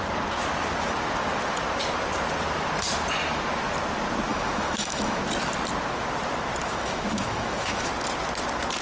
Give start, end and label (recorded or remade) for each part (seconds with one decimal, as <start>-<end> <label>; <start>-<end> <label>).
0.0-4.3 recorded; 4.3-5.2 remade; 5.2-6.6 recorded; 6.6-7.9 remade; 7.9-8.8 recorded